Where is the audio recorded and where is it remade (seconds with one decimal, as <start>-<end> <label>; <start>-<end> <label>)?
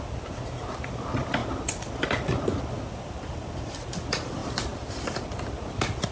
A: 0.0-6.1 recorded